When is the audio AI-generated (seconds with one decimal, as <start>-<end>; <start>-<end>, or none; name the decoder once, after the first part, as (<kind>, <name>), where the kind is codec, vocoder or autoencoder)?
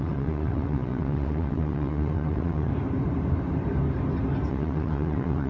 0.0-2.7 (vocoder, WaveNeXt); 4.5-5.5